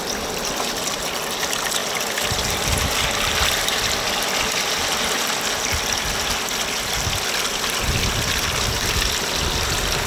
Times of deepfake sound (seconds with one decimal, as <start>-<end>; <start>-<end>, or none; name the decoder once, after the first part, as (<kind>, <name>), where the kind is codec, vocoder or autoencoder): none